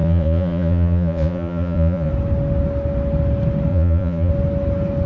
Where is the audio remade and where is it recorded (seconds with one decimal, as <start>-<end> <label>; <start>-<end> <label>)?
0.0-2.1 remade; 2.1-3.7 recorded; 3.7-4.3 remade; 4.3-5.1 recorded